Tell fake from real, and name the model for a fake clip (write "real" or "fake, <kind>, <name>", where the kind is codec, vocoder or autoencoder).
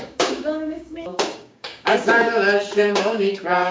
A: fake, codec, DAC